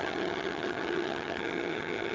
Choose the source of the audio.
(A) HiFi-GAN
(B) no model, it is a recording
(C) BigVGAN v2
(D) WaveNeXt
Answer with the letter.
A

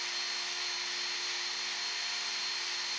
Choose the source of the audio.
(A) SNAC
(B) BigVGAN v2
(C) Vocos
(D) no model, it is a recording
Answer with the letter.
D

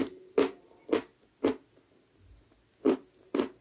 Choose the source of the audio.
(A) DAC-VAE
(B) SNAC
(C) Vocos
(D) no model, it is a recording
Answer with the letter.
D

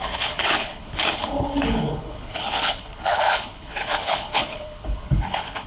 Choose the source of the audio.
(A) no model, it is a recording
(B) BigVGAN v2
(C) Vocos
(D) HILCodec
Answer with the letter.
D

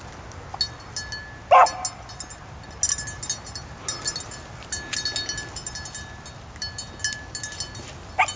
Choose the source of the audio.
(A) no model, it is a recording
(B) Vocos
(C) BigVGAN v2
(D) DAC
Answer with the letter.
A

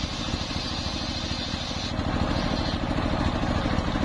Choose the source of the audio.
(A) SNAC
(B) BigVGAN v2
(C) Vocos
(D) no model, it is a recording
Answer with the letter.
D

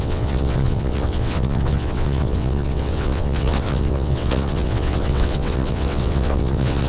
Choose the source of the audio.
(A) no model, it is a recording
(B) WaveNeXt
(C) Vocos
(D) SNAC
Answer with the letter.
B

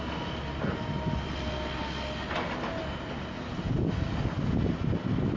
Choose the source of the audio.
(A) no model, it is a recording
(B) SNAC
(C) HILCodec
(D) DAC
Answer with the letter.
A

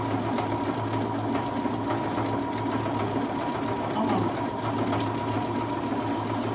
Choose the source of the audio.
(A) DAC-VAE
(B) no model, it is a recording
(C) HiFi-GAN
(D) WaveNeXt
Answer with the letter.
B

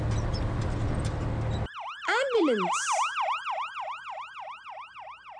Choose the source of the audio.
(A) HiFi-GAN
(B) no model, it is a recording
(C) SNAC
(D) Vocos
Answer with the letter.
B